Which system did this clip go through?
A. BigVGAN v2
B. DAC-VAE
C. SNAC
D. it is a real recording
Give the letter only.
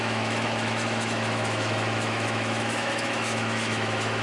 B